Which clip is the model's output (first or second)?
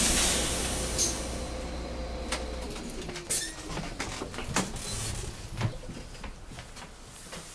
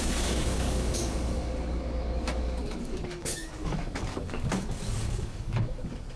second